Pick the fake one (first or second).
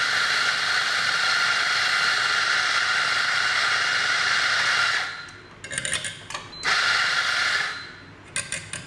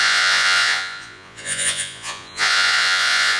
second